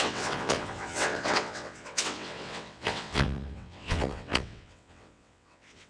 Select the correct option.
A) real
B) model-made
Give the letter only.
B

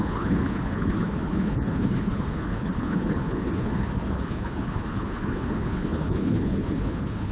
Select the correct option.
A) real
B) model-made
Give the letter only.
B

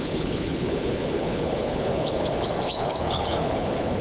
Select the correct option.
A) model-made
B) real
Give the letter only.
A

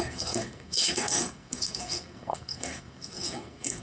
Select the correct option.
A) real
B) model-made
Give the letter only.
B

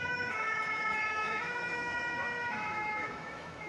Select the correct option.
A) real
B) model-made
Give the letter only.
B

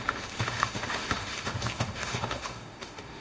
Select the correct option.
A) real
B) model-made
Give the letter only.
B